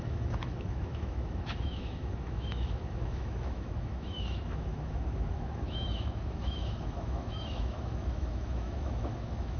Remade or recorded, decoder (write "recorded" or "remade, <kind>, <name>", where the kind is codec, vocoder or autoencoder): remade, autoencoder, DAC-VAE